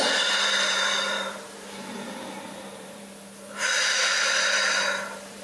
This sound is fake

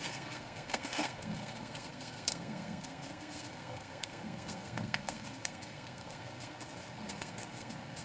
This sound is fake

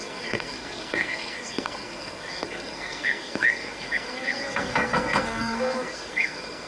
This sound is fake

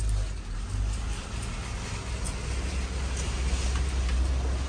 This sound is real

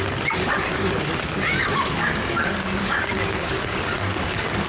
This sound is fake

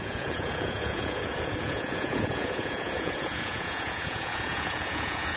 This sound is fake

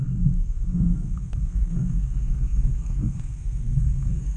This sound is fake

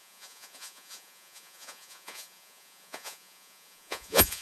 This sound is fake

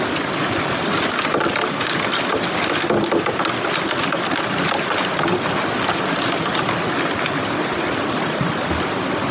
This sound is real